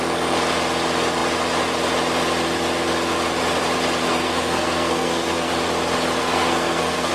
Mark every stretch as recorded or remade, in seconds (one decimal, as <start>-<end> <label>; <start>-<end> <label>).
0.0-4.0 recorded; 4.0-5.5 remade; 5.5-6.2 recorded; 6.2-7.1 remade